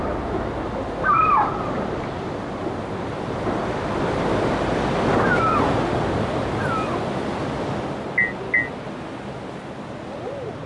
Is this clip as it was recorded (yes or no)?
yes